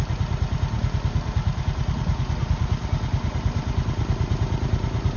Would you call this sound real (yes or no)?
yes